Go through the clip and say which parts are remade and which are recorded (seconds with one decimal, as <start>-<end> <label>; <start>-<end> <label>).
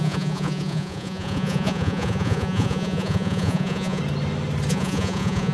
0.0-4.0 remade; 4.0-4.7 recorded; 4.7-5.5 remade